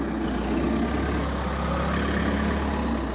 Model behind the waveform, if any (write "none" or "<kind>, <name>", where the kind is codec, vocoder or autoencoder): none